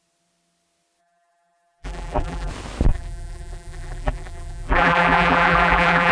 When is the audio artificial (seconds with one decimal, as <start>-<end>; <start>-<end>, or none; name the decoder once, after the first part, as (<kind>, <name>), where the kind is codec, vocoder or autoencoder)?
1.0-2.5 (vocoder, BigVGAN v2); 2.9-6.1